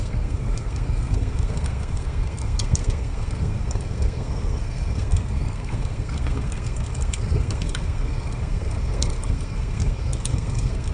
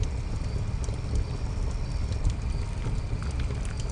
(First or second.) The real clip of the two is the second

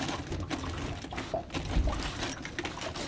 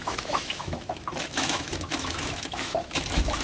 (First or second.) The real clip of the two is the first